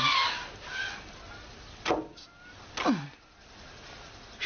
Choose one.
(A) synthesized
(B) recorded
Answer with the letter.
B